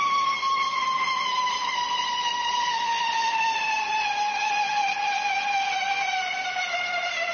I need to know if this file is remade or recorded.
recorded